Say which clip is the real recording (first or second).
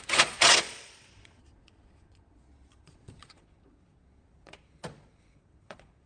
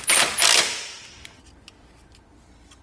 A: second